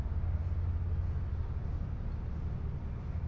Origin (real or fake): real